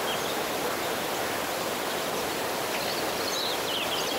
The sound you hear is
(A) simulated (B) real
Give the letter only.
B